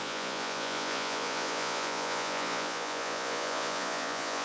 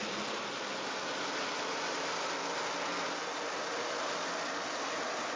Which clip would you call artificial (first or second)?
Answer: first